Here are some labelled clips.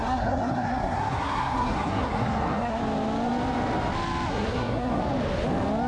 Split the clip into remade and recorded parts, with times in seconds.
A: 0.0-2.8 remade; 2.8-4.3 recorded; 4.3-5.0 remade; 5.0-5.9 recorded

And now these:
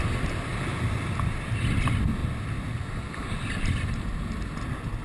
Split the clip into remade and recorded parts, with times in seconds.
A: 0.0-5.0 recorded

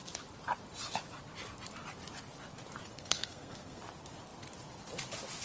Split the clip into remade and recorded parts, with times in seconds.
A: 0.0-2.9 recorded; 2.9-3.8 remade; 3.8-5.4 recorded